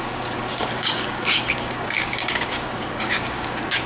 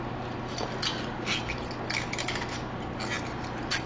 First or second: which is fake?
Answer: first